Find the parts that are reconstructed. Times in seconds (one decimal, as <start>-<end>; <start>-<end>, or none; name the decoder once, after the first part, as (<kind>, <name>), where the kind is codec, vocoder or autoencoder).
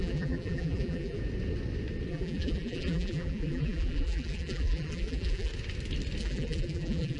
0.0-1.2 (vocoder, BigVGAN v2); 2.1-5.5; 6.2-7.2